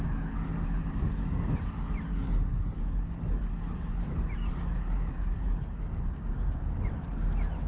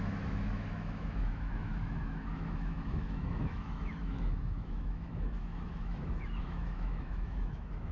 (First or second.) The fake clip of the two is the second